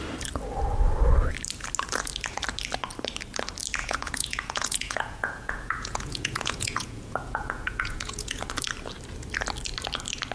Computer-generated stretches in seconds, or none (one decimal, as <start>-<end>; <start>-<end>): 3.8-8.4